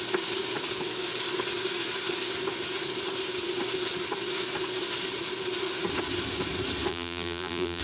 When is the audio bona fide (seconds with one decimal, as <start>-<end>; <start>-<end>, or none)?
0.0-6.9